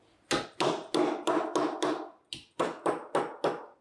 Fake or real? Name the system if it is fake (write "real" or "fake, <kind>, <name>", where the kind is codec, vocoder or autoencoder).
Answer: real